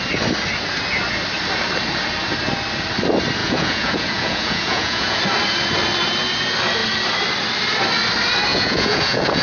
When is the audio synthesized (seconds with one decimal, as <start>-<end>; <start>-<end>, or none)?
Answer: 3.4-5.2; 8.5-9.4